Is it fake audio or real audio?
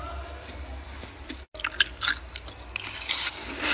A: real